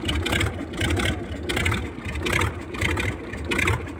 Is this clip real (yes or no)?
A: yes